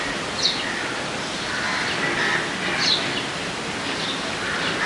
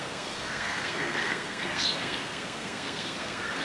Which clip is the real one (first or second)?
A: first